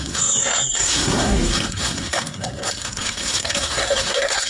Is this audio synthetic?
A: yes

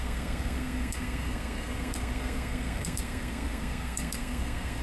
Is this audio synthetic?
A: yes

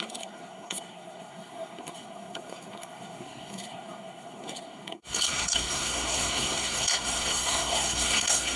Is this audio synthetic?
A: yes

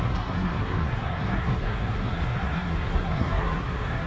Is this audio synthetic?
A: yes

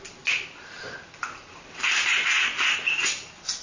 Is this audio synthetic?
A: no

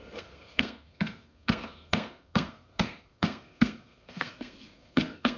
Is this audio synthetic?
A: yes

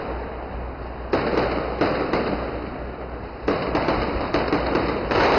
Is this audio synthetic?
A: no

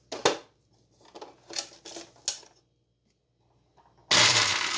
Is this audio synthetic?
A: no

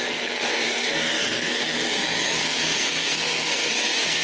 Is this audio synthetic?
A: yes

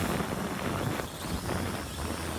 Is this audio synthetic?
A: no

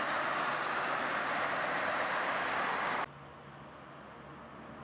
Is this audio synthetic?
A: no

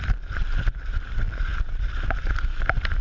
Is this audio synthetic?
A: no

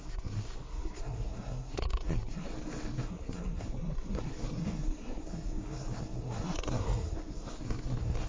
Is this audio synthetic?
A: yes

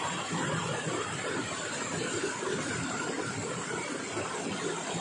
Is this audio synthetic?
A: no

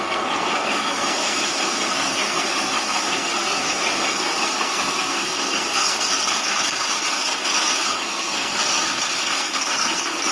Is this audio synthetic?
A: yes